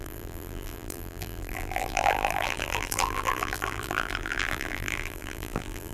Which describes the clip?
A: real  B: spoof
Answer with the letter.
B